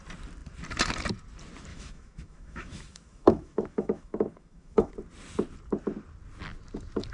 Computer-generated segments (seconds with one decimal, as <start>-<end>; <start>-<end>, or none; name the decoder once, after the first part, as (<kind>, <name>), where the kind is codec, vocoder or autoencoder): 1.7-4.9 (autoencoder, DAC-VAE)